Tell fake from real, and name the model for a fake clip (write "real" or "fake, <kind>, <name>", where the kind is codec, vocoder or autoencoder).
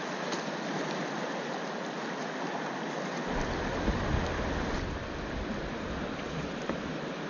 real